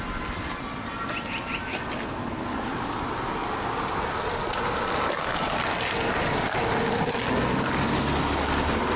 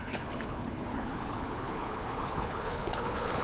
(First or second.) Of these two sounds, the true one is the first